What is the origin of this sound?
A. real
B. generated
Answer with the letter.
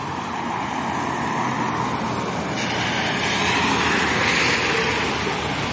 A